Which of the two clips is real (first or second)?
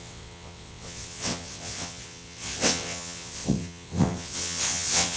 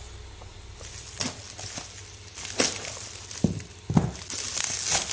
second